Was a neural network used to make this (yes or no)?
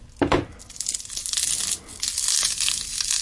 no